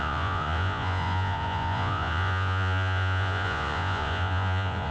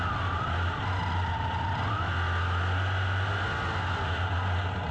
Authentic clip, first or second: second